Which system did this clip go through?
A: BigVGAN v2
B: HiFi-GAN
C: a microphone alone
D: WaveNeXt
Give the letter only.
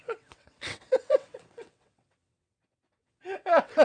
D